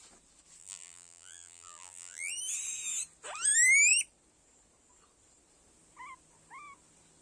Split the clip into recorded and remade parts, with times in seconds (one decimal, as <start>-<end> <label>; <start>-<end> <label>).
0.0-0.6 recorded; 0.6-2.3 remade; 2.3-7.2 recorded